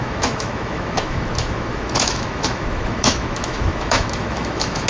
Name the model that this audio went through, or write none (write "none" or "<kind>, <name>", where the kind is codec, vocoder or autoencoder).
autoencoder, DAC-VAE